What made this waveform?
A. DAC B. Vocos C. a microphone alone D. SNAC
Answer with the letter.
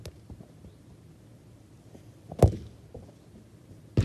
C